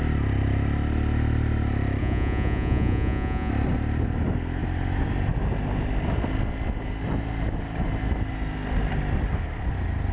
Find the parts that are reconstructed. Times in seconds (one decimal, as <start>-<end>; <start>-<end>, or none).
2.0-3.5

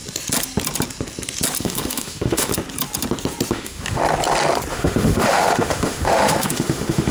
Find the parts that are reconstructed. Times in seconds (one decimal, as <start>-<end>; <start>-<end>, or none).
1.6-2.5; 3.5-4.0; 4.7-7.1

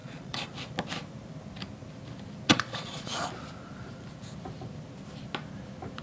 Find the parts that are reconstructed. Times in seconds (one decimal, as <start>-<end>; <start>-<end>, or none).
0.0-0.5; 2.5-3.1

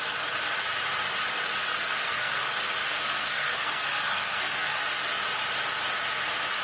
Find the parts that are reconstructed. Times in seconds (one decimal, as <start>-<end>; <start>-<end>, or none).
1.7-4.8

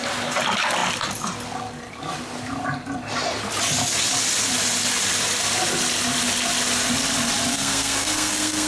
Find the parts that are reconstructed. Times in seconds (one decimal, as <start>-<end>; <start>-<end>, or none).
7.5-8.7

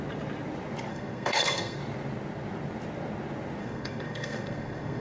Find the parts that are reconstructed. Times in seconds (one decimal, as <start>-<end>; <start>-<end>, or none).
0.9-1.8; 3.6-5.0